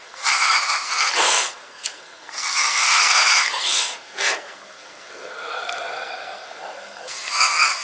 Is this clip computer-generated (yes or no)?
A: yes